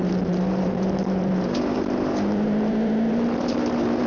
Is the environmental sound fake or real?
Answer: fake